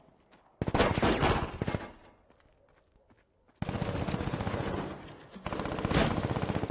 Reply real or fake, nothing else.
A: real